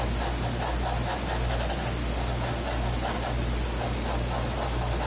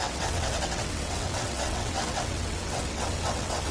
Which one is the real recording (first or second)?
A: first